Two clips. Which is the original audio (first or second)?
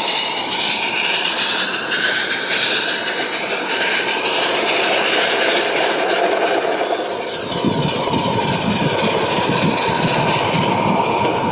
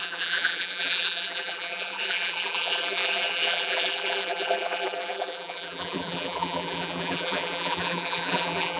first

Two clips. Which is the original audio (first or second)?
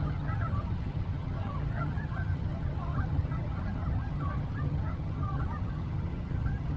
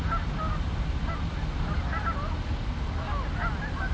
second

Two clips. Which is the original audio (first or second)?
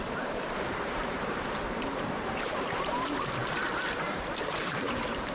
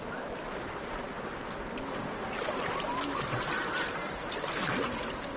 second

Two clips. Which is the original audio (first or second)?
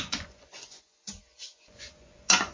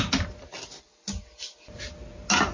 second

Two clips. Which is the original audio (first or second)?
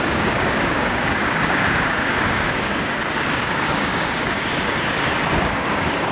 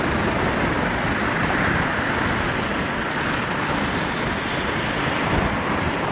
second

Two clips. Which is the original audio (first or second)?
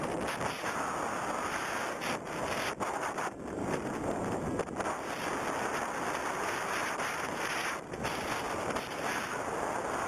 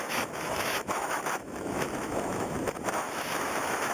first